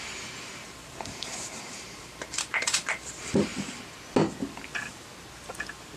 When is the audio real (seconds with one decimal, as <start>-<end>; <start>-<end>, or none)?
3.5-6.0